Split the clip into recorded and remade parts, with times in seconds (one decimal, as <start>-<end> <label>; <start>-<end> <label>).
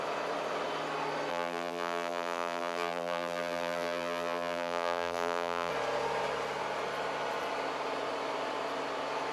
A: 0.0-1.3 recorded; 1.3-5.7 remade; 5.7-9.3 recorded